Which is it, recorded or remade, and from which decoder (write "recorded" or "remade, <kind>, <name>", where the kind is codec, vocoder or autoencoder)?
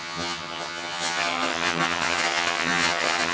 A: remade, vocoder, HiFi-GAN